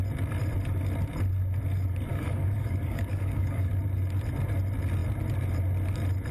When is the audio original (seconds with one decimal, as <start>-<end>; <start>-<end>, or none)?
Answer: 0.0-2.1; 3.7-6.3

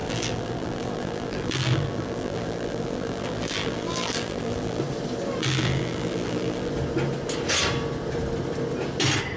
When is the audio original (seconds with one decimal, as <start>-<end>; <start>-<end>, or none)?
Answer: 4.8-5.4; 6.7-9.4